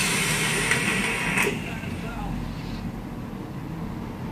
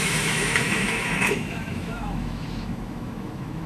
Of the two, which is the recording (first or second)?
first